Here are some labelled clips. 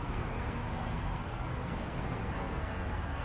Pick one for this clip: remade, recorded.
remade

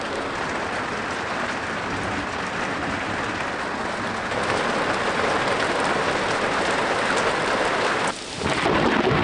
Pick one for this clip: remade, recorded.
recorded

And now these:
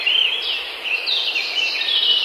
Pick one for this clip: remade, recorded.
recorded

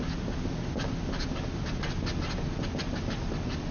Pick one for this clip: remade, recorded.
recorded